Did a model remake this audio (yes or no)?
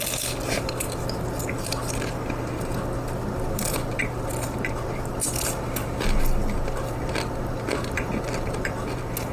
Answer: no